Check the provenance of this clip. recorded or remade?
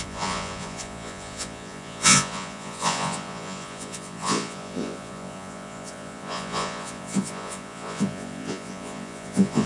remade